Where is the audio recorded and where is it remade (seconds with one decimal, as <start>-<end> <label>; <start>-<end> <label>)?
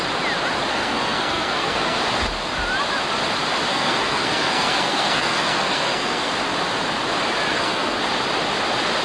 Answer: 0.0-0.7 recorded; 0.7-2.0 remade; 2.0-3.7 recorded; 3.7-6.3 remade; 6.3-7.5 recorded; 7.5-8.0 remade; 8.0-9.0 recorded